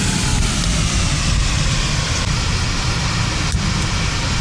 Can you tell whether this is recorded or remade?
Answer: recorded